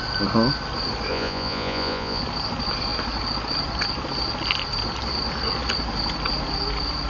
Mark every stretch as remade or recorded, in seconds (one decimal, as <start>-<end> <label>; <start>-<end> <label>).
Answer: 0.0-1.1 recorded; 1.1-2.2 remade; 2.2-7.1 recorded